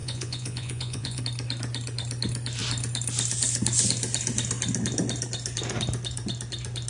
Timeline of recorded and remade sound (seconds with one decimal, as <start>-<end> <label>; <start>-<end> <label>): 0.0-1.2 remade; 1.2-6.9 recorded